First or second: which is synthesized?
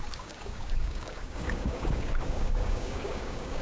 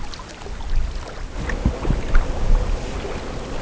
first